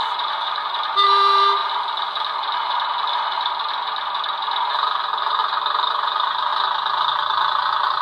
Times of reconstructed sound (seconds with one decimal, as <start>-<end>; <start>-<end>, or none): 0.0-1.6; 4.7-5.4; 5.9-6.5